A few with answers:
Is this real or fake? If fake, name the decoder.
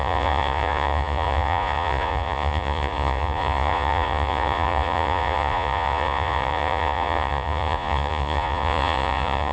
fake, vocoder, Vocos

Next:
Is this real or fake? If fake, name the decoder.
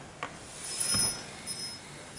real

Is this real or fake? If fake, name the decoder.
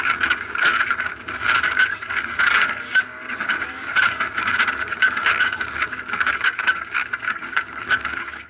fake, codec, DAC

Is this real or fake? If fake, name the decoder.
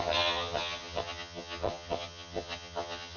fake, vocoder, HiFi-GAN